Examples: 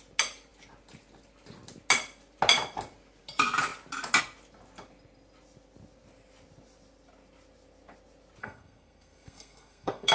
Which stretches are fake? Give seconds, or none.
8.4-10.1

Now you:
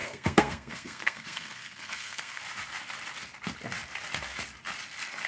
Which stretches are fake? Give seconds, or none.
0.0-2.4

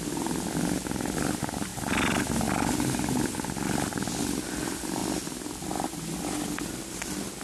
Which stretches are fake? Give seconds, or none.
none

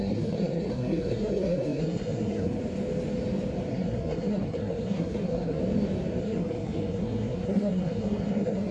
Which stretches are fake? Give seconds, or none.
0.0-2.6; 3.7-5.6; 6.2-8.7

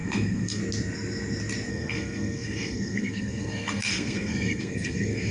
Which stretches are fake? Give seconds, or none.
0.0-0.6; 1.7-5.3

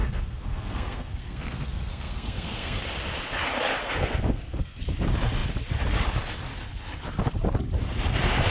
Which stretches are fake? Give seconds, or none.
0.0-2.8; 3.8-4.8

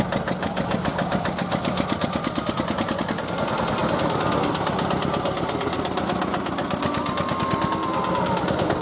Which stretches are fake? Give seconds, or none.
none

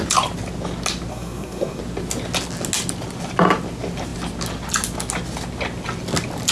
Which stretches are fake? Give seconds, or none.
1.1-1.8